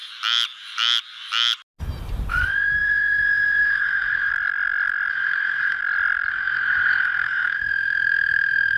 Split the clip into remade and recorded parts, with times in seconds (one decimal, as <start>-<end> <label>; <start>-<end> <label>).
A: 0.0-2.3 recorded; 2.3-4.3 remade; 4.3-5.1 recorded; 5.1-5.8 remade; 5.8-6.3 recorded; 6.3-8.8 remade